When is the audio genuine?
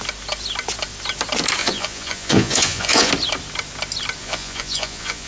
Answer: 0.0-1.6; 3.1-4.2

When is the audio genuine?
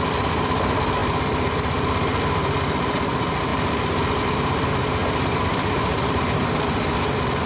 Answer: 0.0-7.5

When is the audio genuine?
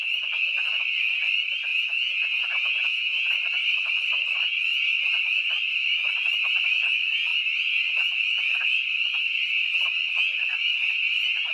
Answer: 0.0-1.7; 3.3-11.5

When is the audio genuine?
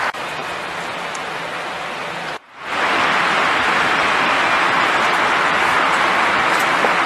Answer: 0.0-7.1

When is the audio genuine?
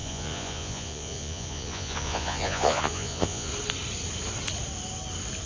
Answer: 3.5-5.5